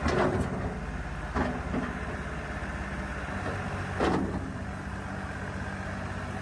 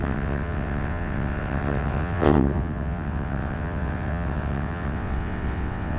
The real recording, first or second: first